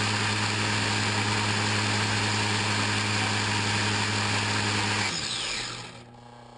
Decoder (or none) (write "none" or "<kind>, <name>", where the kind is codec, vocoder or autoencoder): none